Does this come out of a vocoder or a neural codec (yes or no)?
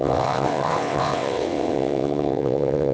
yes